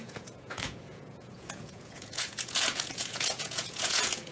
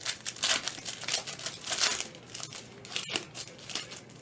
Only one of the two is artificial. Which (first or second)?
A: first